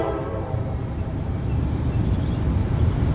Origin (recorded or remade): remade